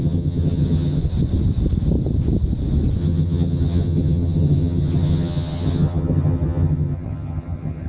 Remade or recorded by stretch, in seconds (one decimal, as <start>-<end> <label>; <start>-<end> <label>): 0.0-1.0 remade; 1.0-3.0 recorded; 3.0-7.9 remade

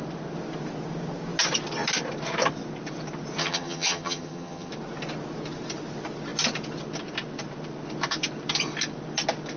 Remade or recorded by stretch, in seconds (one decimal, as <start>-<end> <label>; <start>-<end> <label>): 0.0-3.4 recorded; 3.4-4.7 remade; 4.7-9.6 recorded

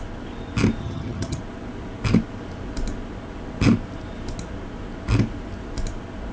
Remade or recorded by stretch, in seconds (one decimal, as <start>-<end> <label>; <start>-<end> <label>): 0.0-0.8 recorded; 0.8-1.4 remade; 1.4-6.3 recorded

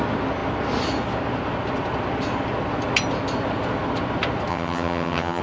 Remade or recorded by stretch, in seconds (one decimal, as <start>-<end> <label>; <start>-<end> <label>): 0.0-4.5 recorded; 4.5-5.4 remade

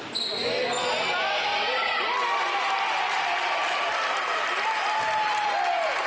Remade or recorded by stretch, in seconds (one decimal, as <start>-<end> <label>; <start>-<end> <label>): 0.0-6.1 recorded

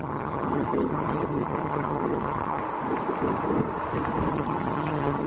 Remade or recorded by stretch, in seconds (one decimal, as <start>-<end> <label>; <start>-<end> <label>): 0.0-2.6 remade; 2.6-4.3 recorded; 4.3-5.3 remade

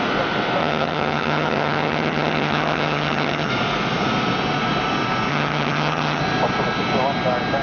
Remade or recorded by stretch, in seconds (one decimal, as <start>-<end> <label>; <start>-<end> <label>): 0.0-0.6 recorded; 0.6-3.5 remade; 3.5-5.3 recorded; 5.3-6.2 remade; 6.2-7.6 recorded